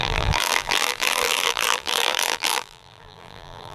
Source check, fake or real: fake